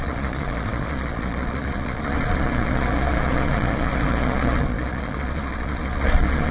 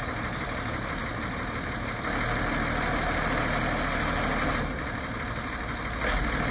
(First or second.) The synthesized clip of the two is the first